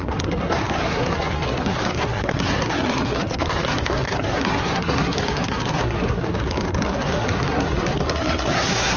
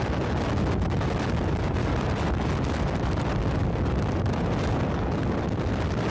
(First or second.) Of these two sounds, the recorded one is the second